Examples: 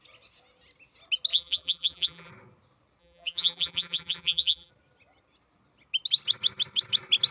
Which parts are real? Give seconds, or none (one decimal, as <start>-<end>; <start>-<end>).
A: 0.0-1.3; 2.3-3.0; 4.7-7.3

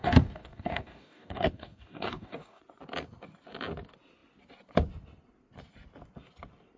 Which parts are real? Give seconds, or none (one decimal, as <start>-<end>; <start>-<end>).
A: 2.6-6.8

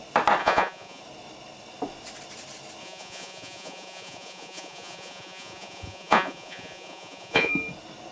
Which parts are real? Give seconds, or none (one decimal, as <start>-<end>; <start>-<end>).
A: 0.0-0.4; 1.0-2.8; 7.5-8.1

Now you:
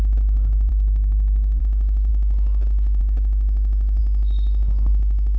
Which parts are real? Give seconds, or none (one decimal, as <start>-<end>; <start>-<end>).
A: 0.0-0.7; 1.6-5.4

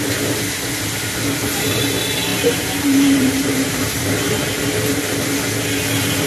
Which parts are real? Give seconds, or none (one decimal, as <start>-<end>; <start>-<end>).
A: 0.0-2.3; 4.1-6.3

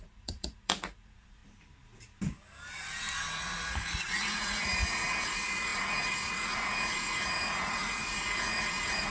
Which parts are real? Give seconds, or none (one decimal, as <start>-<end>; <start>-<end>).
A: 1.4-3.4

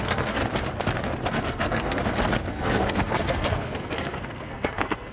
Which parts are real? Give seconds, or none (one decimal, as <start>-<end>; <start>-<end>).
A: 0.4-1.3; 2.0-2.5